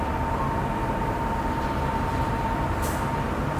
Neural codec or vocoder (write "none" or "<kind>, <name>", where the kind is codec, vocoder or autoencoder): vocoder, BigVGAN v2